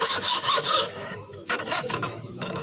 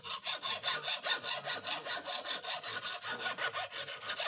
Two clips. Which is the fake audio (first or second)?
first